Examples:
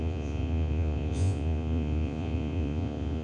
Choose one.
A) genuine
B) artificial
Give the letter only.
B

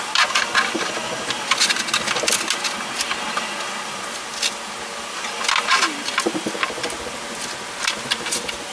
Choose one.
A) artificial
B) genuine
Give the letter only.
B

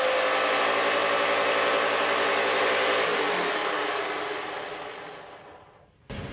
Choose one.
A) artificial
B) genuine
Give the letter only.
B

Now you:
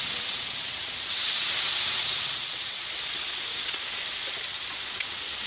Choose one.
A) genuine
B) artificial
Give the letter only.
B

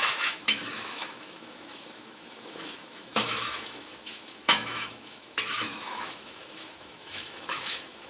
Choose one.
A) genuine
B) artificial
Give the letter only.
B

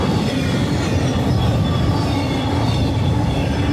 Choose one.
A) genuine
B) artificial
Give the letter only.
A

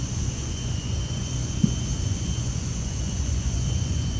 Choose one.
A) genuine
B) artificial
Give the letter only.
B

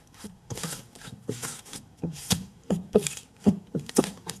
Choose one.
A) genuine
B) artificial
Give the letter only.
B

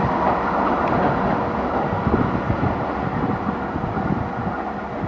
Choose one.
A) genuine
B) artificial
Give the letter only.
A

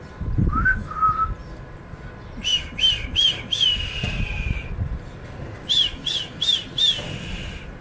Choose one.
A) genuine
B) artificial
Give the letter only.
A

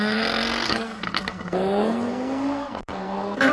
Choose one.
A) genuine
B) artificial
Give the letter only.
B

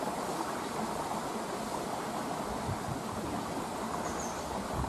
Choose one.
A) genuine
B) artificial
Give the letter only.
A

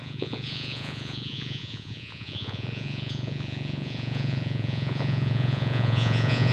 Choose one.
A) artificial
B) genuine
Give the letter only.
A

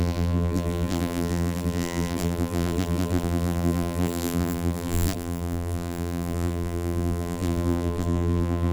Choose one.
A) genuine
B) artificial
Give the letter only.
B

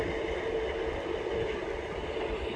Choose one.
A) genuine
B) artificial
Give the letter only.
A